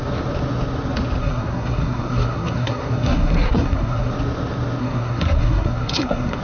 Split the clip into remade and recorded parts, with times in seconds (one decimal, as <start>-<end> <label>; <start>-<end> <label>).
0.0-1.2 recorded; 1.2-4.1 remade; 4.1-4.8 recorded; 4.8-6.4 remade